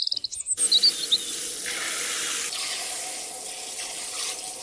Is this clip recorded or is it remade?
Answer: recorded